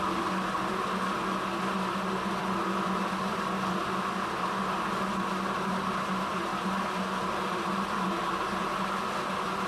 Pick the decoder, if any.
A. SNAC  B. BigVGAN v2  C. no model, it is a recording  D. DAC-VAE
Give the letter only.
C